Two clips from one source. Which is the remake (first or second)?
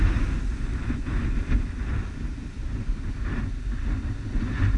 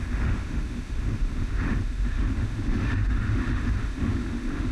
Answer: second